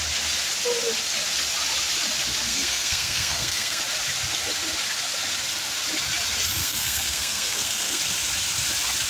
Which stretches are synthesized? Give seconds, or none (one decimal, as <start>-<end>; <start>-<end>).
2.5-3.8; 6.6-8.0